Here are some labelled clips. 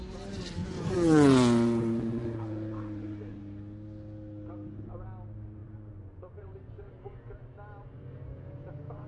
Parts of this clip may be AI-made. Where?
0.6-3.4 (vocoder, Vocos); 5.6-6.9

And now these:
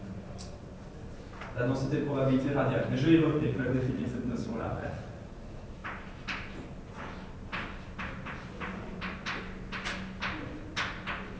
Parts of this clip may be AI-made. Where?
3.3-5.3 (vocoder, Vocos)